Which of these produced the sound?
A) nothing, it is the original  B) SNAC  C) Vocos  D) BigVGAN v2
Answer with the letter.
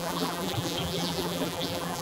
D